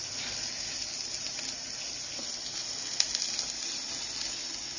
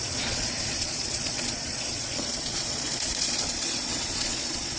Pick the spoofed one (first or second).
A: second